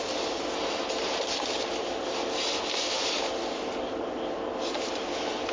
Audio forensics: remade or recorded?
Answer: recorded